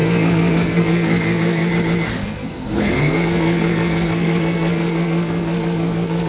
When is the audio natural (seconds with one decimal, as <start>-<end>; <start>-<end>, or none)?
1.7-2.2